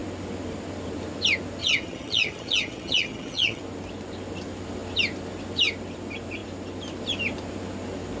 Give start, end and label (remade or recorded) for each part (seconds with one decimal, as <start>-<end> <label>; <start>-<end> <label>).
0.0-1.6 recorded; 1.6-3.6 remade; 3.6-8.2 recorded